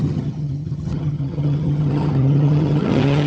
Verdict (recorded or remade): remade